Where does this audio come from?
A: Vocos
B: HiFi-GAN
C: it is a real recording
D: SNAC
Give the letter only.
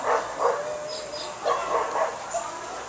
C